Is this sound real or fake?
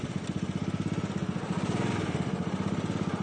real